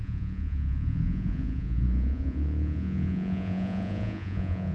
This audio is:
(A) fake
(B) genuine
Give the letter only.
A